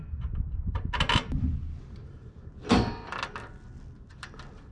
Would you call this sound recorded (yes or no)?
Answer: yes